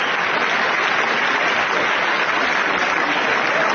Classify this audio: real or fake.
real